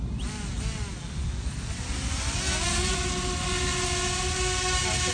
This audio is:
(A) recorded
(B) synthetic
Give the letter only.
A